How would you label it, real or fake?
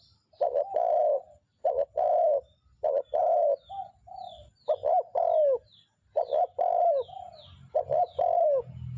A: real